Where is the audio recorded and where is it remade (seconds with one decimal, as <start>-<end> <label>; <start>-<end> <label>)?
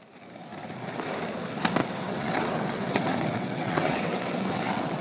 0.0-1.8 recorded; 1.8-5.0 remade